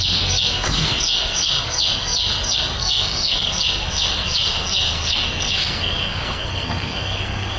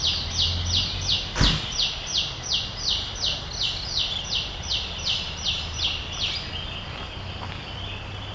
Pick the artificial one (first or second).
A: first